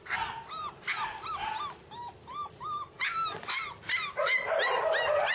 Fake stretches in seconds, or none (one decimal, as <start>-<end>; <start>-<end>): none